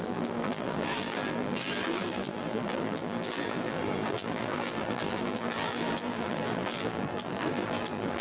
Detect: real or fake fake